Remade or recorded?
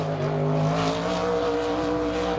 recorded